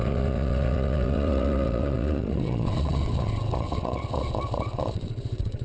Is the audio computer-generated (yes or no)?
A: yes